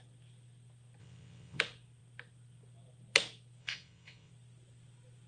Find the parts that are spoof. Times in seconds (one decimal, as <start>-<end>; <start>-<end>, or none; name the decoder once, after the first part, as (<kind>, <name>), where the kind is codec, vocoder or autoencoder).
1.0-1.6 (vocoder, WaveNeXt); 3.6-4.3